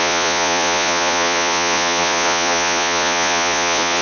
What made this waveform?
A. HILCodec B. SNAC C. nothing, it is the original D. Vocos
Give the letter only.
D